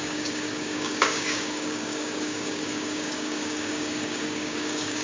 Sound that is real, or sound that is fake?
fake